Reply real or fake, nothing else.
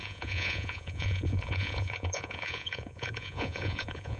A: fake